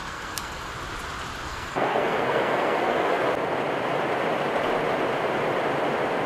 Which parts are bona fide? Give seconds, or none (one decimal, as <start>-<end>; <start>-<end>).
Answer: 0.7-1.5; 3.2-6.3

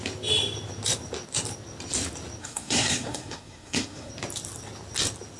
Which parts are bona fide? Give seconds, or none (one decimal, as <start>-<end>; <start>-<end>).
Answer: 0.0-2.4; 4.1-5.4

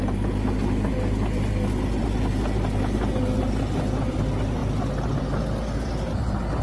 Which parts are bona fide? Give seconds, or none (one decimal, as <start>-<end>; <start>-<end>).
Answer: 0.0-6.6

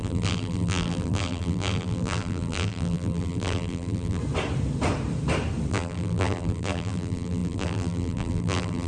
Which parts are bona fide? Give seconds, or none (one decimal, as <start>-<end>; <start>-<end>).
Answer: 4.2-5.7

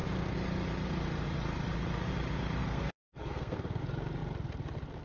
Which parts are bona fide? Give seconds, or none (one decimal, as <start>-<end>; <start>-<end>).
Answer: 0.0-2.6; 3.8-5.0

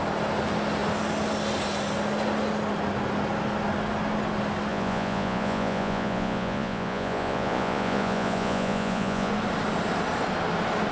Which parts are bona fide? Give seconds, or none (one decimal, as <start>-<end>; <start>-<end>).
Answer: 0.0-4.7; 9.3-10.9

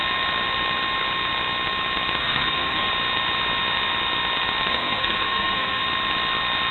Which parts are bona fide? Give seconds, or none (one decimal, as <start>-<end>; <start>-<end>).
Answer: 0.0-2.2; 2.9-4.7; 5.8-6.7

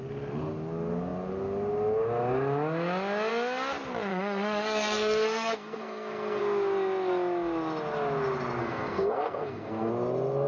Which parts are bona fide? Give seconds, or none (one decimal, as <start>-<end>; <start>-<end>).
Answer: 0.0-4.1; 6.4-8.6; 9.9-10.5